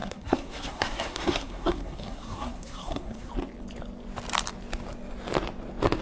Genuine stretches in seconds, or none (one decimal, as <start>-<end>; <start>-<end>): 3.3-6.0